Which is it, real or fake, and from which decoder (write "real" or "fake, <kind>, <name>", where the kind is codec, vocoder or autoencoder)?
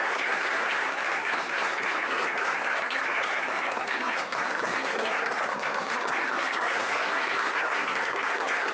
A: fake, codec, SNAC